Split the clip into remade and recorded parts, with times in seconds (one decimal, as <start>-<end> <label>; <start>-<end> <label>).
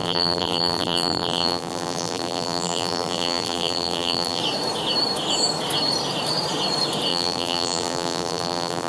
0.0-4.4 remade; 4.4-7.1 recorded; 7.1-8.9 remade